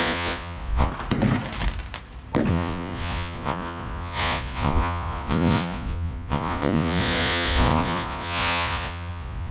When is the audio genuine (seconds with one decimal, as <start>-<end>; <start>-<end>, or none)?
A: 0.9-2.5